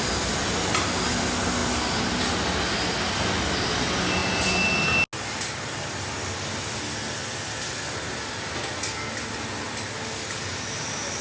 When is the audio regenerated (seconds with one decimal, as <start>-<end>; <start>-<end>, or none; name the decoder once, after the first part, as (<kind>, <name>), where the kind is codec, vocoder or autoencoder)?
none